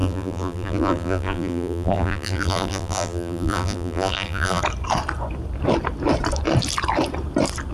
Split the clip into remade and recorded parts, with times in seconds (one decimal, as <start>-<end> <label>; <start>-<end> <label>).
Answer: 0.0-4.6 remade; 4.6-7.7 recorded